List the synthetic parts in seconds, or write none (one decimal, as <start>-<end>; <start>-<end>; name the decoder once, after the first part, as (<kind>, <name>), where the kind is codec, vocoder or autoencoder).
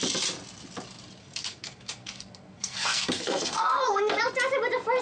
1.2-4.2 (codec, SNAC)